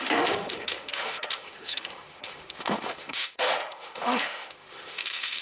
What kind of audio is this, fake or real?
fake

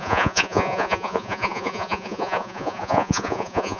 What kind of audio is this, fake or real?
fake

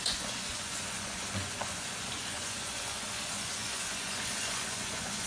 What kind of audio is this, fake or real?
fake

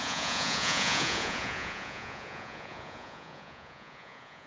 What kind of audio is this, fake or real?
fake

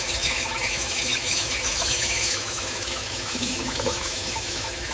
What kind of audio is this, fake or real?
fake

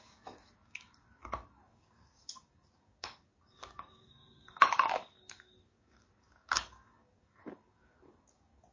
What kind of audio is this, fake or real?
fake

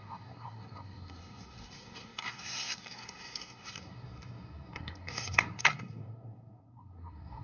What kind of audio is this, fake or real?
fake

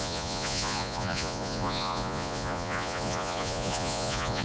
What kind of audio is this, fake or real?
fake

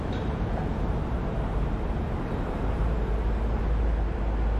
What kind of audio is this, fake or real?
real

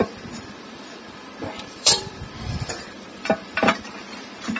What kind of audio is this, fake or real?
fake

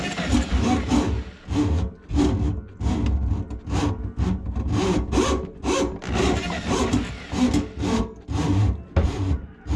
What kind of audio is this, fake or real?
real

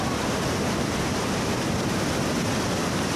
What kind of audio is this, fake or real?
real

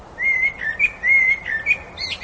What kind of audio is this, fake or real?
real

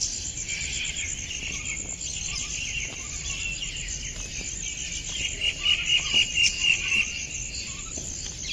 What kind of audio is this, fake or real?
real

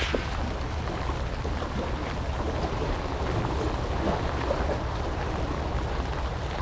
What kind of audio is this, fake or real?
real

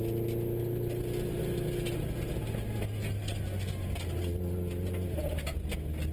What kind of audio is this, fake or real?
real